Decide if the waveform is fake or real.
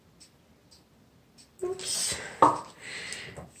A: real